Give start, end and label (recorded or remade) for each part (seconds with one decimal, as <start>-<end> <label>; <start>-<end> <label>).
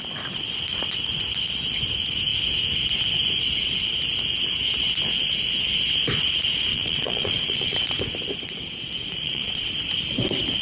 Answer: 0.0-6.7 recorded; 6.7-8.0 remade; 8.0-9.0 recorded; 9.0-9.7 remade; 9.7-10.6 recorded